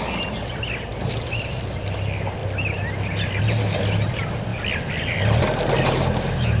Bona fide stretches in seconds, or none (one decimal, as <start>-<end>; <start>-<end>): 0.0-6.6